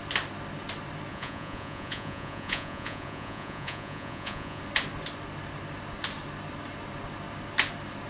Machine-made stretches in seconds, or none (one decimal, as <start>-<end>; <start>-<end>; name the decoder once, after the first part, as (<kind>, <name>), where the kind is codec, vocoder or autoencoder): 1.1-4.6 (vocoder, Vocos)